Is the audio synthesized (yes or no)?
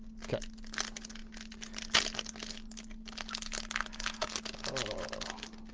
no